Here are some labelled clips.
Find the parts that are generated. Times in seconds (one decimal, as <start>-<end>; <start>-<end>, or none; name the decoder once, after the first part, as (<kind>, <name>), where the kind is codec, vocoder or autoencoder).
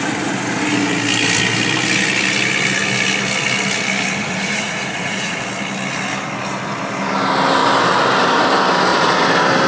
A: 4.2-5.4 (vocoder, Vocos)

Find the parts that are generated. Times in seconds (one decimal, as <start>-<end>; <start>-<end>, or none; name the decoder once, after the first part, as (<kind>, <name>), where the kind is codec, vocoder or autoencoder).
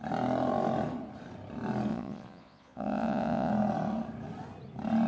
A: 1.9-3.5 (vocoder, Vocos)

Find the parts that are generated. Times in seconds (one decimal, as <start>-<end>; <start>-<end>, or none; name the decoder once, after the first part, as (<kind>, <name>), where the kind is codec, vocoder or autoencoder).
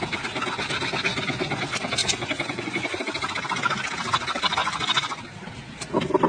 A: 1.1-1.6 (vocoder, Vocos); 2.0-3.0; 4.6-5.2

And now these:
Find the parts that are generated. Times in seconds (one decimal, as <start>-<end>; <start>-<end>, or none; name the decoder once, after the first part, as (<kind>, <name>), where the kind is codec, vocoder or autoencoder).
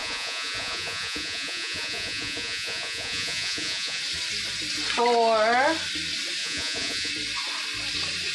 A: 0.0-4.0 (vocoder, Vocos); 6.4-7.1